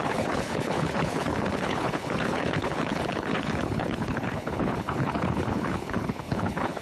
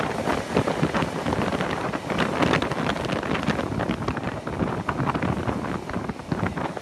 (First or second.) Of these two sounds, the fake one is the first